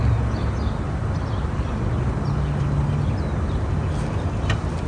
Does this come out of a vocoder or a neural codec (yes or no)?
no